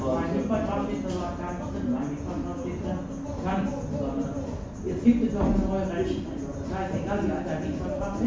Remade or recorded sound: recorded